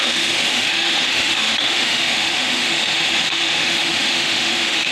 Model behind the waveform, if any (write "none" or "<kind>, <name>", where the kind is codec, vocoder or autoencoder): autoencoder, DAC-VAE